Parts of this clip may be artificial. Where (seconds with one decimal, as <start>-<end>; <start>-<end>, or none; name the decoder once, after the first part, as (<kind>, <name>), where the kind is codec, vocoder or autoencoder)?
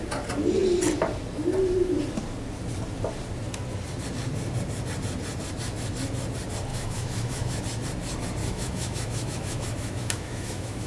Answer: 6.7-7.6 (autoencoder, DAC-VAE); 8.4-10.9